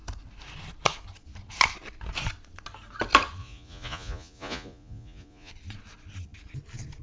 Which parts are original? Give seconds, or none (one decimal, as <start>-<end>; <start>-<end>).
0.0-3.4; 5.5-7.0